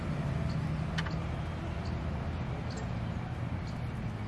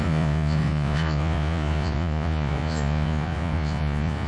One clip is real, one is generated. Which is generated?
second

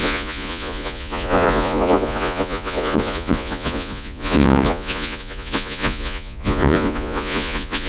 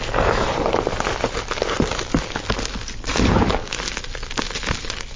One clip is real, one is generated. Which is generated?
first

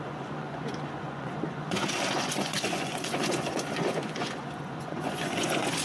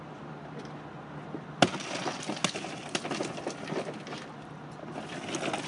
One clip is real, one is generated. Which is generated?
first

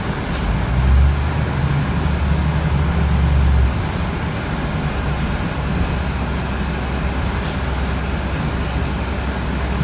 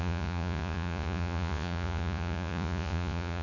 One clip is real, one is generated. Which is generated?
second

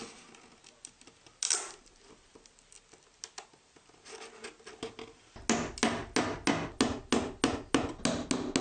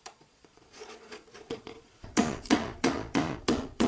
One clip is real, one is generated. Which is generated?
second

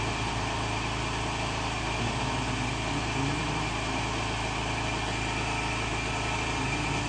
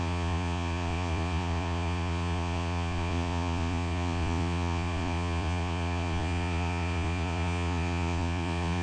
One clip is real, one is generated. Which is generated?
second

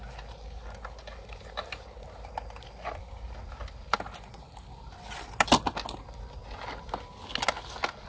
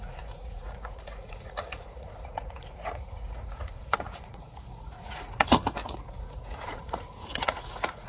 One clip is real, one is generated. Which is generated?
second